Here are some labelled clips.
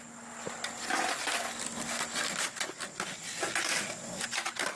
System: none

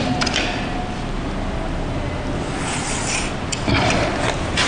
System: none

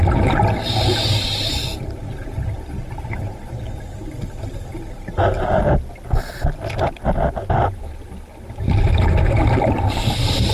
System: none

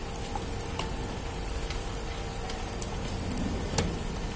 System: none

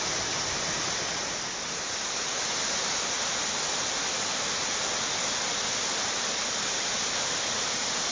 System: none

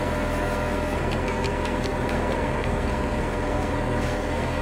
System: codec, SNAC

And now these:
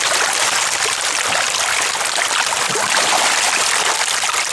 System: none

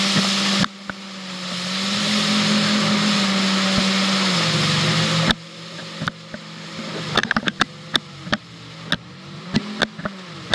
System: none